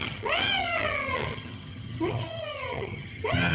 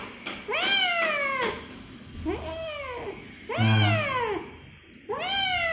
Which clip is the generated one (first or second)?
first